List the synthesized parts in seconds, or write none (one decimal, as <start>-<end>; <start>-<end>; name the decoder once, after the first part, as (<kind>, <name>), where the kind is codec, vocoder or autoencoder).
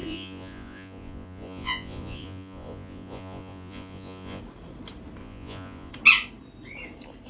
0.0-4.4 (vocoder, Vocos); 5.2-5.9